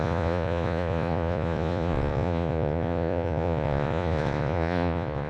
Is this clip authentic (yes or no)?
no